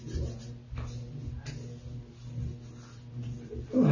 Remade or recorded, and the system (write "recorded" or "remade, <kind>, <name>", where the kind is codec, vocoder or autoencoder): recorded